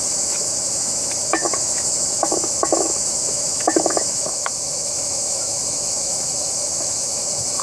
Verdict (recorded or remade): remade